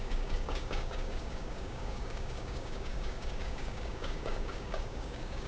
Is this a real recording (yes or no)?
no